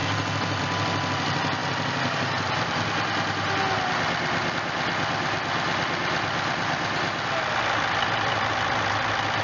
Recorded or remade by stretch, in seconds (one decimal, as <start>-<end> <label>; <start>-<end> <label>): 0.0-9.4 recorded

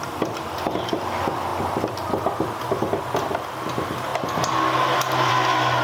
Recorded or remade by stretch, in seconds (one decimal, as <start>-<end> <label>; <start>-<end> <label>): 0.0-5.8 recorded